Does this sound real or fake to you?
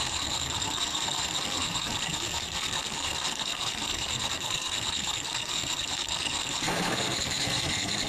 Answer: fake